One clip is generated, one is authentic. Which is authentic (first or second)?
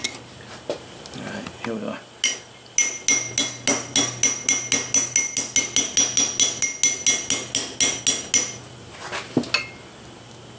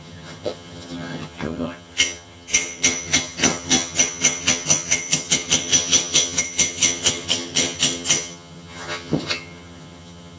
first